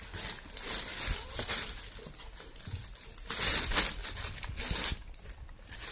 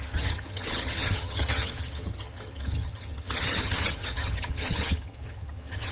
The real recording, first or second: first